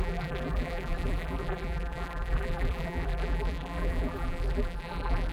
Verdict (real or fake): fake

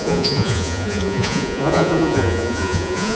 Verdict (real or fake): fake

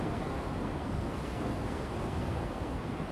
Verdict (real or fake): fake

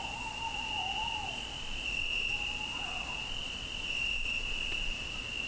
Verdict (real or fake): real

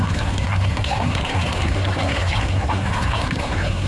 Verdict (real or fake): fake